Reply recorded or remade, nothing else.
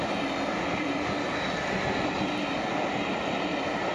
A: recorded